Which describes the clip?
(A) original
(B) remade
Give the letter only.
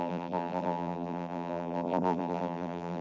B